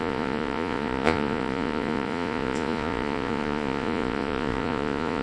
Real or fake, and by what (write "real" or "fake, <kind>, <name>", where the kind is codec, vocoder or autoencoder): fake, vocoder, Vocos